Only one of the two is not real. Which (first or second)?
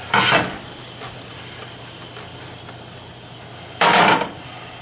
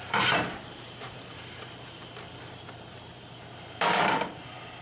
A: second